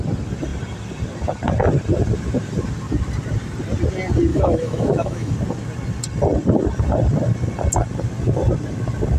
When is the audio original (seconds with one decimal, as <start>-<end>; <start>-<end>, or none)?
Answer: 0.0-4.3; 5.3-9.2